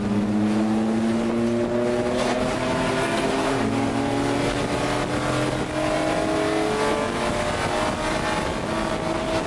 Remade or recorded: recorded